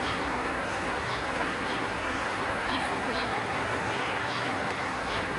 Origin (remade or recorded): remade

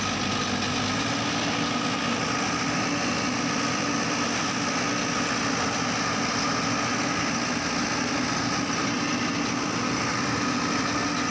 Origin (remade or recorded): recorded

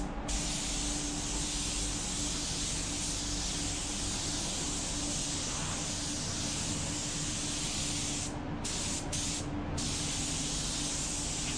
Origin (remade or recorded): recorded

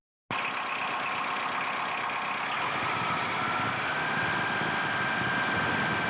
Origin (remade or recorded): recorded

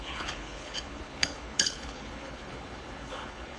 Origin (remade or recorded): remade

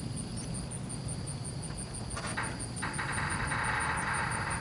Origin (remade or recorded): recorded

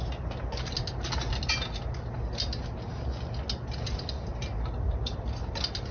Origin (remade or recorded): recorded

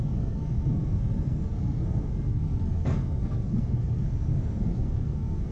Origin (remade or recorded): remade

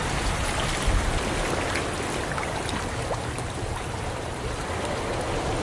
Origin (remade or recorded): recorded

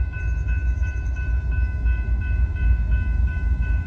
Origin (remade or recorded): remade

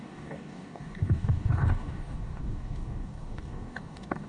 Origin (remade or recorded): remade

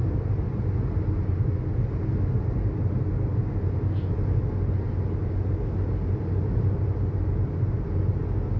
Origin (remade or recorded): recorded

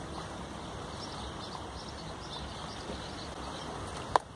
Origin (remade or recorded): recorded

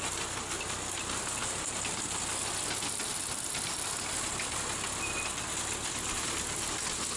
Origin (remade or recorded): recorded